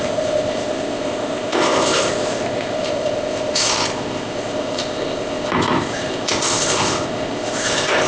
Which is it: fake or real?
fake